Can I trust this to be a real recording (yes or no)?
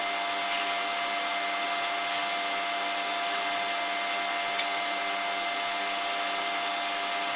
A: yes